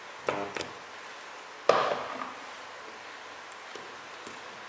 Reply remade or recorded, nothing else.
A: recorded